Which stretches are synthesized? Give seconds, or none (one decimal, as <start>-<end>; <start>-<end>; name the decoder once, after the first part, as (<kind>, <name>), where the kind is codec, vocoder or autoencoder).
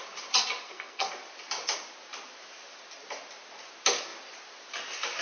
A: 0.6-1.1 (codec, SNAC)